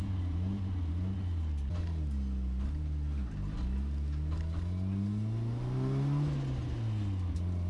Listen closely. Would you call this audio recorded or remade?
recorded